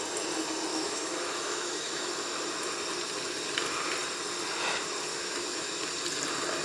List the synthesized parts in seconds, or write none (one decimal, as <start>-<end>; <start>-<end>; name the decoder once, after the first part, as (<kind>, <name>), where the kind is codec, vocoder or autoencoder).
0.7-2.1 (autoencoder, DAC-VAE); 5.1-5.8

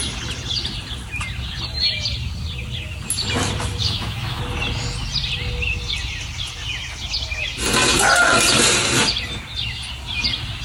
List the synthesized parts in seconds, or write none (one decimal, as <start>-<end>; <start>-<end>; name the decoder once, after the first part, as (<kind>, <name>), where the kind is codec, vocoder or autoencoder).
3.8-4.4 (autoencoder, DAC-VAE)

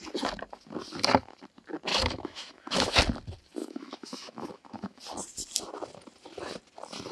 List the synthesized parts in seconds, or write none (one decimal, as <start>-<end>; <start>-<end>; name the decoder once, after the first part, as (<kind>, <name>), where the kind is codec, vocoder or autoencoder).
1.9-3.0 (autoencoder, DAC-VAE); 3.6-5.0

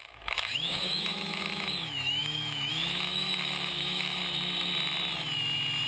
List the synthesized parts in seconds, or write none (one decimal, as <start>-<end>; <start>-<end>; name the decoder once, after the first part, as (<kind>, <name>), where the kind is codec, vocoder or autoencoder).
0.0-4.2 (autoencoder, DAC-VAE)

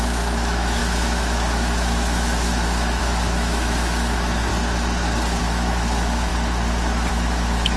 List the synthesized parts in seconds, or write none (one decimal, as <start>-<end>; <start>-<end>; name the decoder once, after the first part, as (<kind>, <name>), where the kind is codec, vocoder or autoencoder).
0.0-4.5 (autoencoder, DAC-VAE); 5.4-6.3; 7.1-7.8